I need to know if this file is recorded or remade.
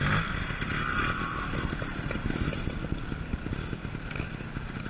recorded